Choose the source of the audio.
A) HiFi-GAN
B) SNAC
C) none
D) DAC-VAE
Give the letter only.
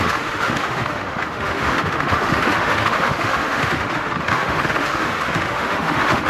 D